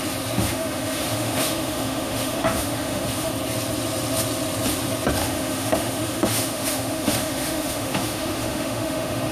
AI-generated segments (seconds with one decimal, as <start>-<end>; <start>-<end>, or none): 0.4-3.3; 5.2-9.3